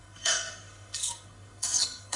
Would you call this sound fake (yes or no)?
yes